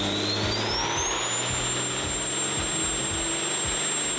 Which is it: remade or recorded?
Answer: recorded